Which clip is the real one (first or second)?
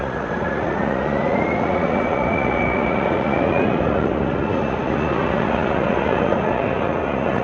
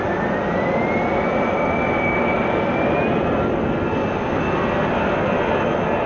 second